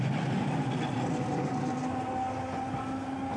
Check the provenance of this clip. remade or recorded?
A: recorded